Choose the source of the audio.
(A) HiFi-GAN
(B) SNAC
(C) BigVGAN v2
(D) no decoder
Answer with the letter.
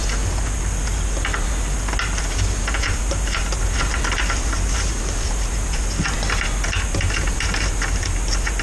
D